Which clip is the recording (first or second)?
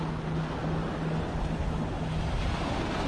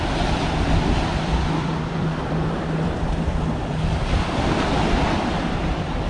first